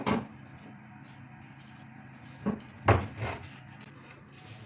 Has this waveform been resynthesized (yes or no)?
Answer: no